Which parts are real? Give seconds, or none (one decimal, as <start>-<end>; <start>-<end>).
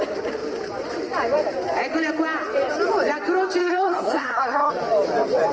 0.0-3.6; 4.7-5.5